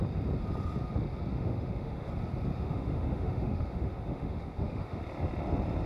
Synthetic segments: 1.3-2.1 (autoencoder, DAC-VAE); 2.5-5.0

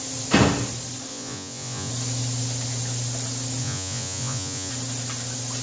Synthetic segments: 1.1-1.9 (vocoder, Vocos); 3.6-4.7

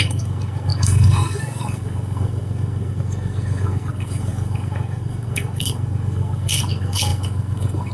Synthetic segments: 0.0-7.9 (codec, SNAC)

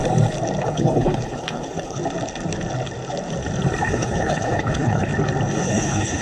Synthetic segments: 0.6-2.0 (codec, HILCodec); 3.8-5.1; 5.6-6.2

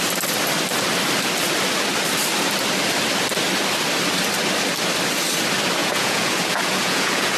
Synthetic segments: 5.8-7.4 (vocoder, Vocos)

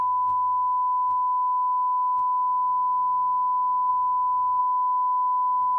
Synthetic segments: 0.0-3.9 (autoencoder, DAC-VAE); 4.6-5.8

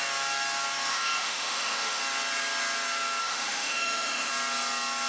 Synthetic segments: 0.9-2.0 (autoencoder, DAC-VAE); 3.2-4.3